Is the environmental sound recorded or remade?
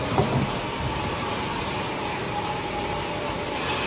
recorded